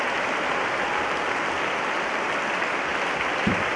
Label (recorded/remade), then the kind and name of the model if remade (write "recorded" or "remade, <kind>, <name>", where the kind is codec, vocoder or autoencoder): recorded